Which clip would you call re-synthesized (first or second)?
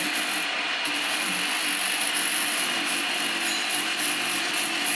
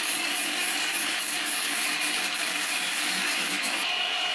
second